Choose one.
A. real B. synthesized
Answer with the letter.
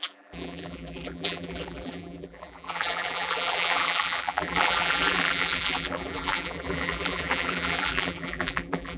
B